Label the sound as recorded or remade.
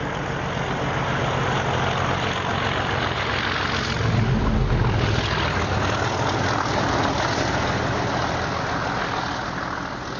recorded